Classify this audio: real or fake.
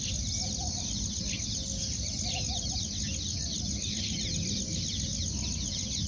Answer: real